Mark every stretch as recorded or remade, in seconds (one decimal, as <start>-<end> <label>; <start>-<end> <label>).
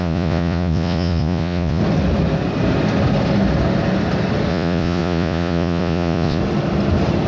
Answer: 0.0-1.8 remade; 1.8-4.5 recorded; 4.5-6.4 remade; 6.4-7.3 recorded